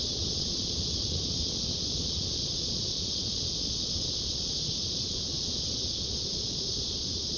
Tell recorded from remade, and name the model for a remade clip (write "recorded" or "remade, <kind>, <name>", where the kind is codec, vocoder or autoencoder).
remade, vocoder, Vocos